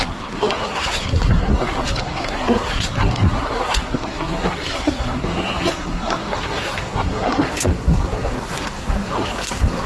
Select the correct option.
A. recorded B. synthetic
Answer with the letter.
B